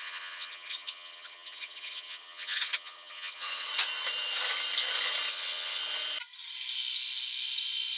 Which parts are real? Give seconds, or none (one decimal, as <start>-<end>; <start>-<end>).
3.7-5.3; 5.8-8.0